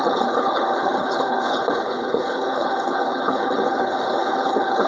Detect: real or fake fake